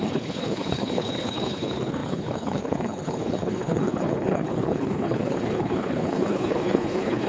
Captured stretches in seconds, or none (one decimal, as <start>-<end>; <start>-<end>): none